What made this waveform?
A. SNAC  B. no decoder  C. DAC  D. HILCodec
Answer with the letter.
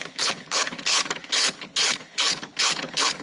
D